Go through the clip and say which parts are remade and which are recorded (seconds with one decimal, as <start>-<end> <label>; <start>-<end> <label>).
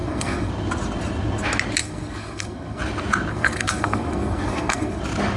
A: 0.0-0.5 remade; 0.5-1.8 recorded; 1.8-2.8 remade; 2.8-3.3 recorded; 3.3-5.0 remade; 5.0-5.4 recorded